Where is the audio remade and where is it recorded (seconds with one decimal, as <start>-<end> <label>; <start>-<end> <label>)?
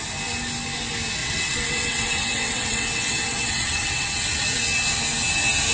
0.0-1.2 recorded; 1.2-4.6 remade; 4.6-5.7 recorded